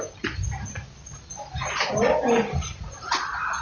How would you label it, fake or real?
real